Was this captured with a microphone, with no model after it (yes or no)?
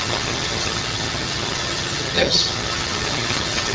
no